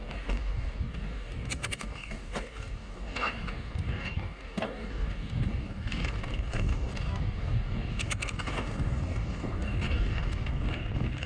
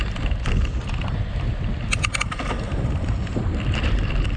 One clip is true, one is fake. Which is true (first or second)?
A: second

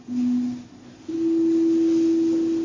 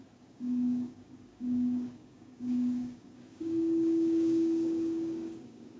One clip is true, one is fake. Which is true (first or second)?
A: first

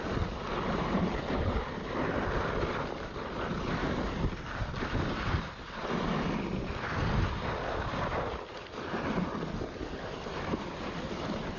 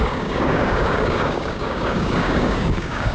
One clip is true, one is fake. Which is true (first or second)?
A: first